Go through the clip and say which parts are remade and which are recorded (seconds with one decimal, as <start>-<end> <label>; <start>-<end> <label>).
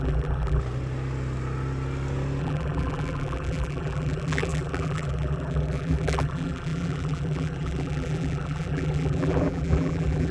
0.0-0.6 remade; 0.6-2.4 recorded; 2.4-10.3 remade